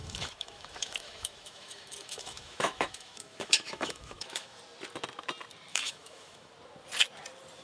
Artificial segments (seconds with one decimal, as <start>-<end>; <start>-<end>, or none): 0.0-4.6; 5.7-6.5